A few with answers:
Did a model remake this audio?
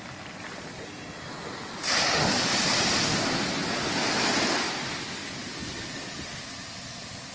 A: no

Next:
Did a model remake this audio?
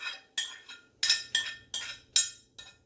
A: no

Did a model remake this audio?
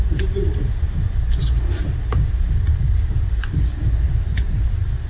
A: no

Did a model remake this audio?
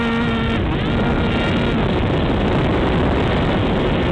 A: no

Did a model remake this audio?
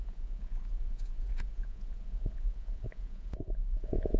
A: yes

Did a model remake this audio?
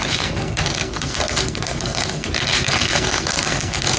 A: yes